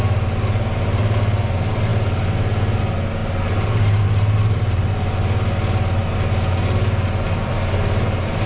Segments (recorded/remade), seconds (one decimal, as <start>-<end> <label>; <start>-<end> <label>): 0.0-3.2 recorded; 3.2-4.9 remade; 4.9-8.5 recorded